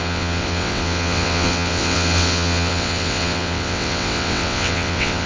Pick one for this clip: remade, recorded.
remade